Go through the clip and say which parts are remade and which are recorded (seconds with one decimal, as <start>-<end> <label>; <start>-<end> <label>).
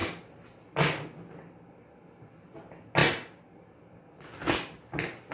0.0-5.3 recorded